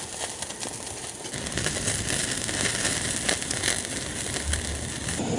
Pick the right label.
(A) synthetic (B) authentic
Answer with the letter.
B